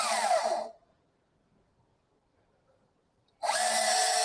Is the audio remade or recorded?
remade